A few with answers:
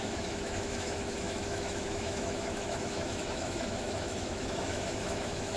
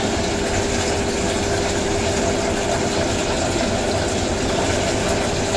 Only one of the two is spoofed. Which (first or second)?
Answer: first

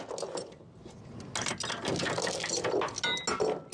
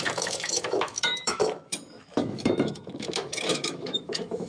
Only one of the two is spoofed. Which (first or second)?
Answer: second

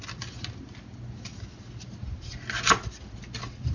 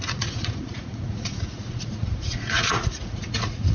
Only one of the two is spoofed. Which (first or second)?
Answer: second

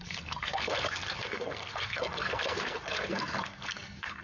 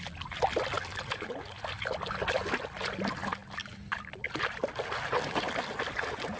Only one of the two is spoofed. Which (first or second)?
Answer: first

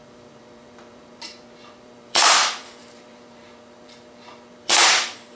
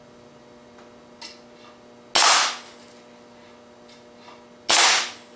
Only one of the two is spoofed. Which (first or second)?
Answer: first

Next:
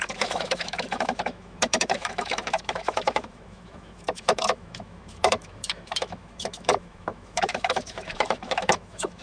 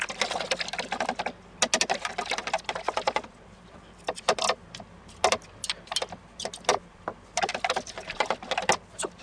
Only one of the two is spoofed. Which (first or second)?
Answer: first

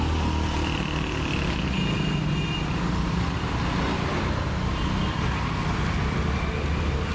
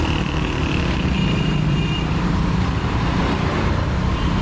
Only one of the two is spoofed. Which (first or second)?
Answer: second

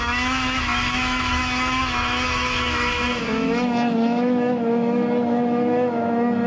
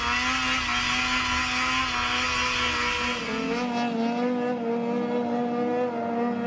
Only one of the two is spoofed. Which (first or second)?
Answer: first